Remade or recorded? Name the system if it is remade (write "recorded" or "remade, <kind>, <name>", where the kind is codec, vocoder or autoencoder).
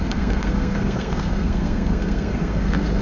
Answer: remade, codec, SNAC